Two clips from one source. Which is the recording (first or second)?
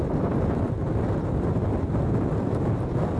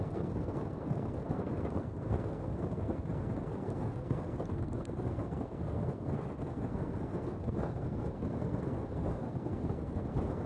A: first